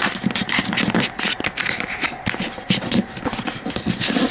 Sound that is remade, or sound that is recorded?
recorded